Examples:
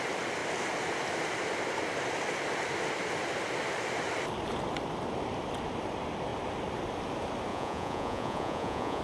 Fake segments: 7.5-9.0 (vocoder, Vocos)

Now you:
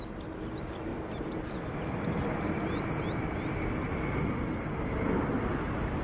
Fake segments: none

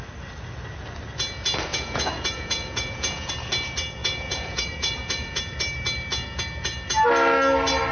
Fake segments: 1.7-3.3 (vocoder, Vocos); 4.0-5.4

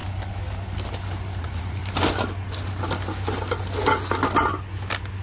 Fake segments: 1.4-1.8 (vocoder, Vocos)